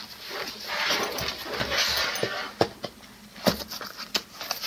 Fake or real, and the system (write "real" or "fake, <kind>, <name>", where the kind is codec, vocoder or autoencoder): real